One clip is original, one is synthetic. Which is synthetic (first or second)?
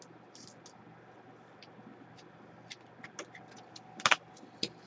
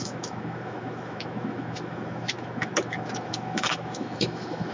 second